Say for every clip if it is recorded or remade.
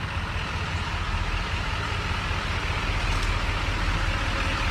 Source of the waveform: recorded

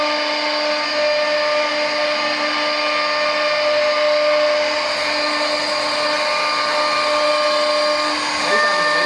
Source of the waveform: recorded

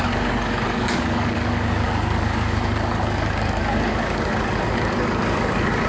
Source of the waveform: remade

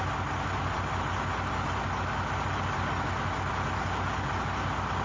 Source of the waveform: recorded